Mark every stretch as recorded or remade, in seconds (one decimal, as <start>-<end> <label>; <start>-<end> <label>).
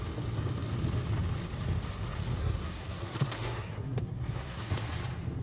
0.0-2.4 recorded; 2.4-4.7 remade; 4.7-5.4 recorded